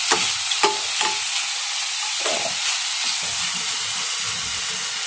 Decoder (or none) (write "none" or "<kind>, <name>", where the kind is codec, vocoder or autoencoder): none